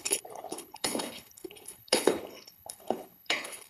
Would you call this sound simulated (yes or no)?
yes